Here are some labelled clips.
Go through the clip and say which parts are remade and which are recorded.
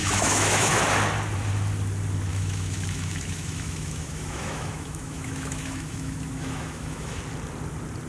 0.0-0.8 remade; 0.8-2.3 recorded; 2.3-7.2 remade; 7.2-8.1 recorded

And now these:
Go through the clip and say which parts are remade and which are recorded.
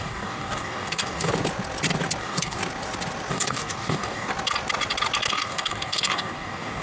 0.0-1.3 remade; 1.3-2.2 recorded; 2.2-2.6 remade; 2.6-3.3 recorded; 3.3-4.3 remade; 4.3-5.3 recorded; 5.3-6.8 remade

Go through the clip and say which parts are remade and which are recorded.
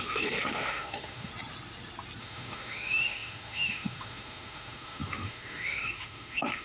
0.0-1.3 remade; 1.3-2.2 recorded; 2.2-6.6 remade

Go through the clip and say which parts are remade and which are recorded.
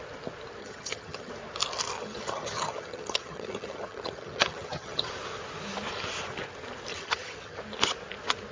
0.0-0.6 recorded; 0.6-1.3 remade; 1.3-2.0 recorded; 2.0-5.1 remade; 5.1-6.9 recorded; 6.9-7.6 remade; 7.6-8.5 recorded